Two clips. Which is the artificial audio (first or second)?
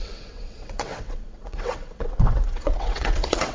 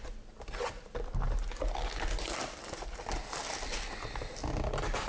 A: first